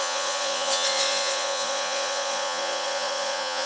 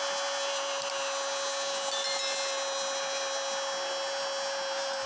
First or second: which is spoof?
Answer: first